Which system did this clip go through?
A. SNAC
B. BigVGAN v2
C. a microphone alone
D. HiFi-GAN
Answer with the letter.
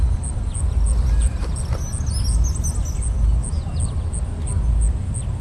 C